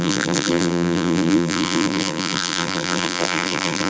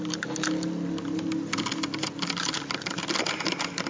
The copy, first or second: first